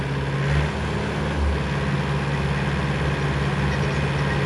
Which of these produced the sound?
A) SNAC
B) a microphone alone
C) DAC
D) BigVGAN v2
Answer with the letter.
B